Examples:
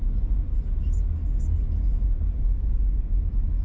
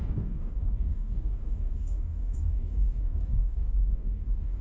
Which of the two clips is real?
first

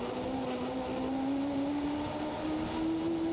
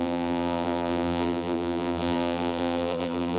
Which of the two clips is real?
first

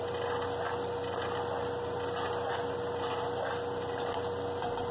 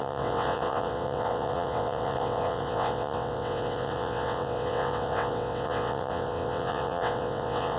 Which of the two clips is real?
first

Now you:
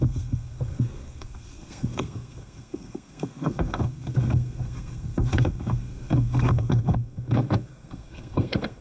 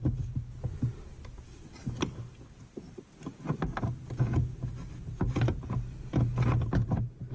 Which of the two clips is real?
second